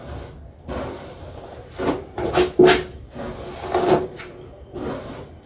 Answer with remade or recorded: recorded